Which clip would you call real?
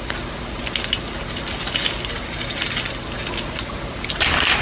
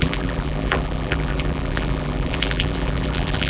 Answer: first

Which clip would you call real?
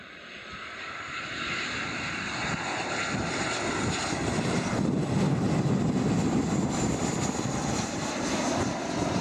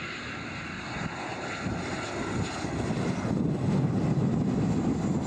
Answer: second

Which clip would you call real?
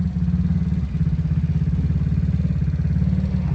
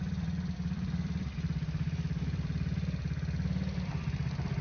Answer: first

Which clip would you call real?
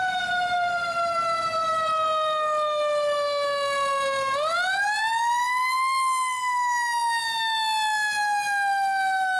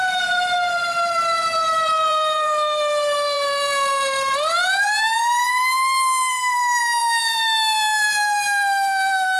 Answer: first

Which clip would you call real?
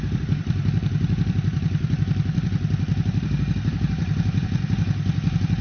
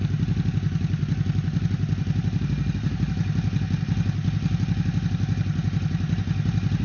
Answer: second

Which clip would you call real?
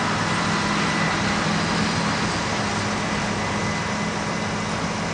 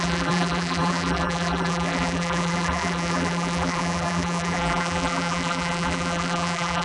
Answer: first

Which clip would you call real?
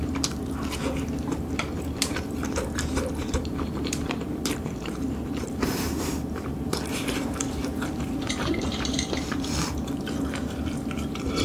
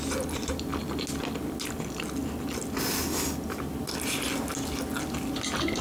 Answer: second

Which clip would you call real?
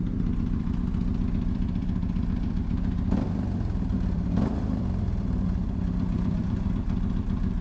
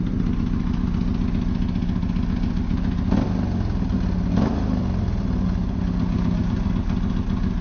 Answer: second